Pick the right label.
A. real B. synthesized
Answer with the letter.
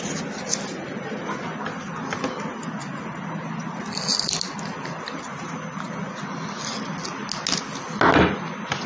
A